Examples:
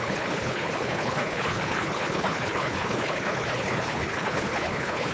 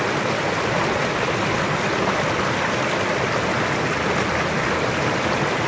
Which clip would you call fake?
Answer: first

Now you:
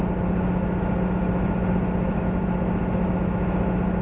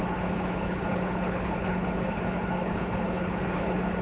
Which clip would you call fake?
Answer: second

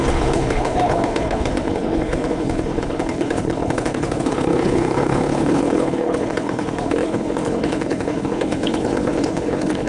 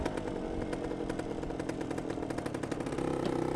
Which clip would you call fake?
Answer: first